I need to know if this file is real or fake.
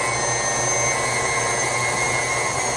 real